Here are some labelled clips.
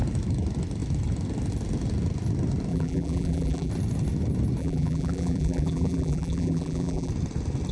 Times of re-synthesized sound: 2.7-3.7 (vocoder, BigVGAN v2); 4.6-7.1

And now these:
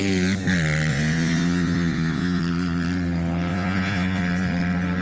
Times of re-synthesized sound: 0.9-2.4 (vocoder, Vocos); 3.5-4.2

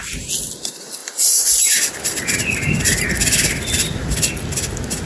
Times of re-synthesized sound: 1.0-4.1 (vocoder, BigVGAN v2)

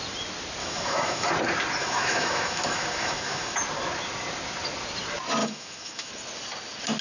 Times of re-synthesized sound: 0.6-1.3 (autoencoder, DAC-VAE); 1.8-3.6; 5.4-6.1

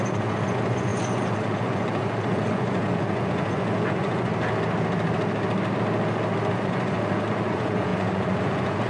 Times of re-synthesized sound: 0.0-4.3 (vocoder, Vocos); 6.5-8.9

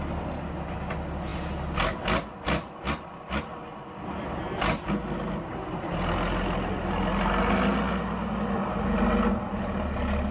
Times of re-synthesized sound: none

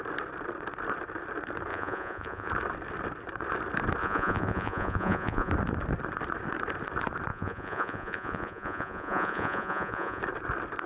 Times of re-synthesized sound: 1.7-2.5 (vocoder, Vocos); 4.0-5.5; 7.3-10.2